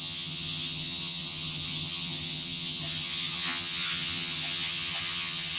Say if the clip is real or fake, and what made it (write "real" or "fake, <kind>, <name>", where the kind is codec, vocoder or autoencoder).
fake, vocoder, HiFi-GAN